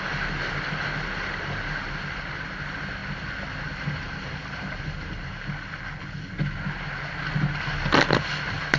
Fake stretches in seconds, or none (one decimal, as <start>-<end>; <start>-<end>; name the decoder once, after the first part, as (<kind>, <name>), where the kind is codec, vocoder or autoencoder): none